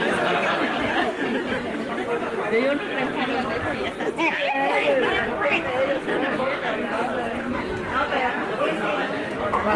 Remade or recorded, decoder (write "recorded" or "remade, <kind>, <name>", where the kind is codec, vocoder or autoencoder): recorded